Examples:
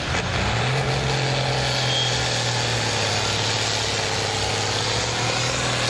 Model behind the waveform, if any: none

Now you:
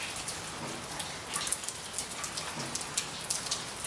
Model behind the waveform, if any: none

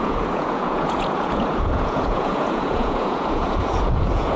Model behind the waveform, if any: vocoder, Vocos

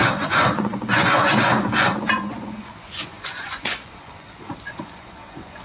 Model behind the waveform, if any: vocoder, Vocos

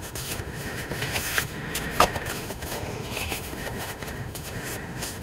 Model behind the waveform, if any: autoencoder, DAC-VAE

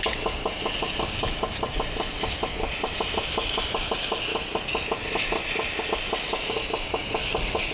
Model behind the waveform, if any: none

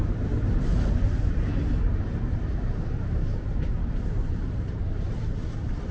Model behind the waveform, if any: vocoder, BigVGAN v2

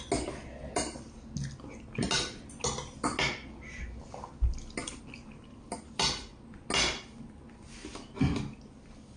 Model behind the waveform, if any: none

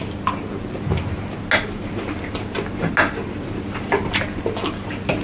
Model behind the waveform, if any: none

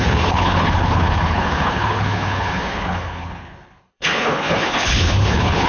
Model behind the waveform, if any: codec, HILCodec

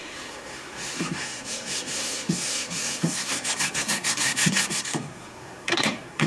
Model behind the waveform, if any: codec, SNAC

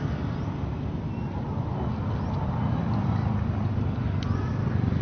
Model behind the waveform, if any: none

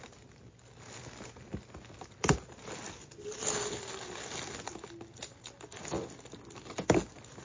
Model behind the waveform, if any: none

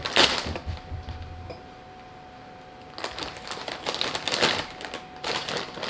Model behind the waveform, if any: none